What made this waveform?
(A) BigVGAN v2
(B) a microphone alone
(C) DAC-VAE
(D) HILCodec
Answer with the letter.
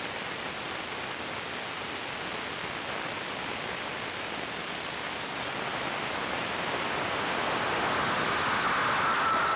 B